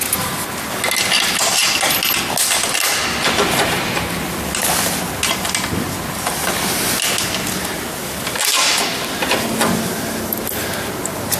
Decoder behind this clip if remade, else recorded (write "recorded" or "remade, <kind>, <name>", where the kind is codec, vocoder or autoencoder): recorded